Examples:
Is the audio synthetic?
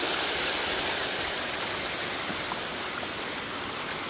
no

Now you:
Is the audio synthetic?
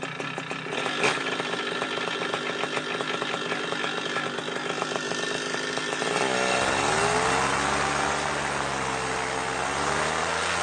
no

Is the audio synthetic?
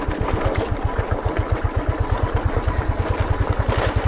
no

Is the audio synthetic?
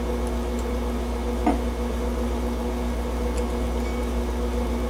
no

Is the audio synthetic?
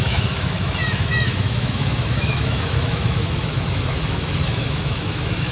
yes